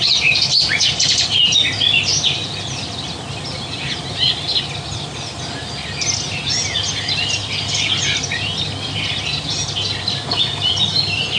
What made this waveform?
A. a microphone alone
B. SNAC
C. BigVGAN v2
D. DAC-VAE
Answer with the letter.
A